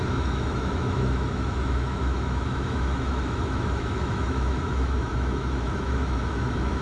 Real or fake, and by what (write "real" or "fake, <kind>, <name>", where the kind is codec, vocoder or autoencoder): fake, autoencoder, DAC-VAE